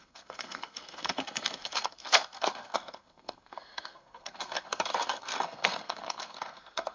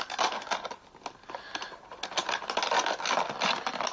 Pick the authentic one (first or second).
second